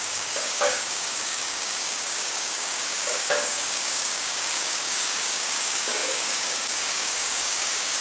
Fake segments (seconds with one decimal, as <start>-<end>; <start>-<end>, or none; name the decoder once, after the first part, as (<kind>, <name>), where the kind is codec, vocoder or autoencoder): 0.0-8.0 (codec, DAC)